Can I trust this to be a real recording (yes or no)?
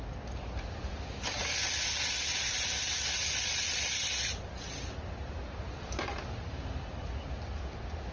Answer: yes